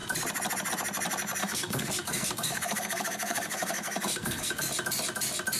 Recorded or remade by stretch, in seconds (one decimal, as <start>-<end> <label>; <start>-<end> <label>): 0.0-1.4 recorded; 1.4-4.6 remade; 4.6-5.6 recorded